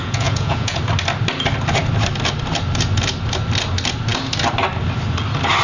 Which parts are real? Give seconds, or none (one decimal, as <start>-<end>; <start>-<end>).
0.8-5.6